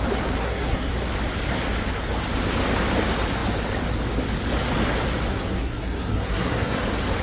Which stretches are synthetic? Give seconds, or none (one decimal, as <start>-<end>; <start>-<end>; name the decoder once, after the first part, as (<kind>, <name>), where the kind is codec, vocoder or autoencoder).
0.4-0.9 (codec, SNAC); 5.3-6.8